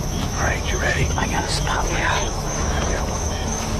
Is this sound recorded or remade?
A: remade